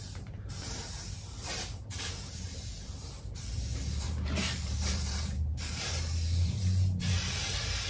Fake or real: fake